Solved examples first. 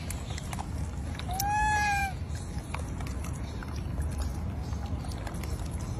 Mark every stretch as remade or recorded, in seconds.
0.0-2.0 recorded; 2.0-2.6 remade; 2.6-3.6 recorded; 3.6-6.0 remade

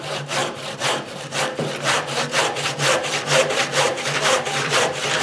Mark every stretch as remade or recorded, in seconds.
0.0-0.4 remade; 0.4-3.5 recorded; 3.5-5.2 remade

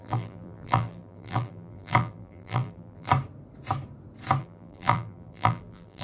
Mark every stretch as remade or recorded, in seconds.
0.0-3.1 remade; 3.1-4.4 recorded; 4.4-6.0 remade

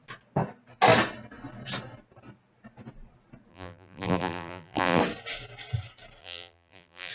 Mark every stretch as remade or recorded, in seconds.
0.0-3.5 recorded; 3.5-5.0 remade; 5.0-6.2 recorded; 6.2-7.1 remade

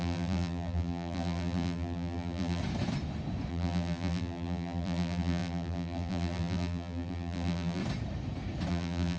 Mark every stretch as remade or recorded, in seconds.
0.0-2.6 remade; 2.6-3.5 recorded; 3.5-7.8 remade; 7.8-8.7 recorded; 8.7-9.2 remade

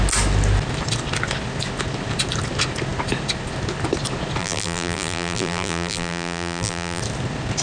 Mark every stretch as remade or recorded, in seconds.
0.0-4.4 recorded; 4.4-7.0 remade; 7.0-7.6 recorded

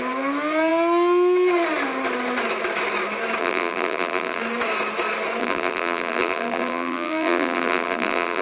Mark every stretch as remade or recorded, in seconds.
0.0-3.4 recorded; 3.4-4.4 remade; 4.4-5.4 recorded; 5.4-8.4 remade